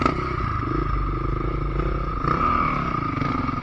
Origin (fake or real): real